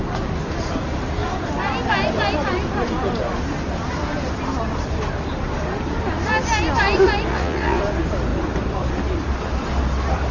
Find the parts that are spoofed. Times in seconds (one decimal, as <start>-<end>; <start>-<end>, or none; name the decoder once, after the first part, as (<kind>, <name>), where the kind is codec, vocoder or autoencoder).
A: 7.3-7.8 (vocoder, WaveNeXt)